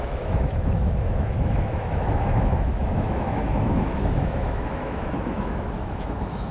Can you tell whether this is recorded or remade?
remade